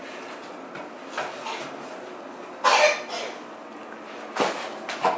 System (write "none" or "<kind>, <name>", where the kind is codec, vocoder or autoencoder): none